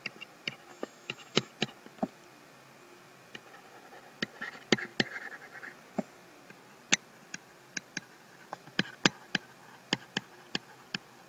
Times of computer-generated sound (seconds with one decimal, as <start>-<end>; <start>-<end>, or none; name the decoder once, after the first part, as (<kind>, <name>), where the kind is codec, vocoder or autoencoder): 0.7-1.5 (autoencoder, DAC-VAE)